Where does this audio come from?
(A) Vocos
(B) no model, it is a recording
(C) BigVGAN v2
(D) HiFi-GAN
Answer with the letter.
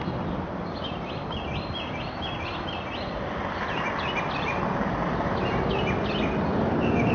B